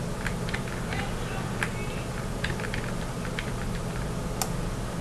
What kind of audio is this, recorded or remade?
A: recorded